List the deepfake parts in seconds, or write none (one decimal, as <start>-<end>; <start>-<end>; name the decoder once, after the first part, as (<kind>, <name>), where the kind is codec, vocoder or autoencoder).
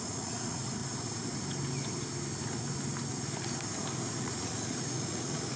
0.0-0.8 (vocoder, Vocos); 4.2-5.6